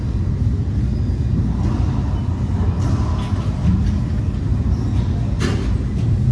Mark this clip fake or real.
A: real